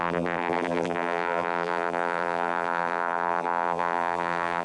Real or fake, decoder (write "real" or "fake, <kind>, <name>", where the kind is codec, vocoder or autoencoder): fake, vocoder, BigVGAN v2